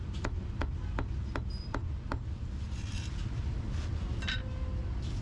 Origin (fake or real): real